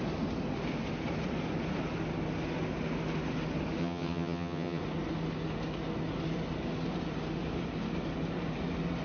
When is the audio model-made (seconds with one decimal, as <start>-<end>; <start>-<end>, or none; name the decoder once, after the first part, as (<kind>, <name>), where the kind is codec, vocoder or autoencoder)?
3.8-4.8 (vocoder, HiFi-GAN)